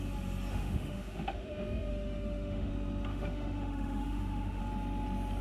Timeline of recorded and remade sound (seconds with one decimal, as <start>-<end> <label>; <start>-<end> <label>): 0.0-0.5 recorded; 0.5-2.7 remade; 2.7-3.1 recorded; 3.1-4.6 remade; 4.6-5.4 recorded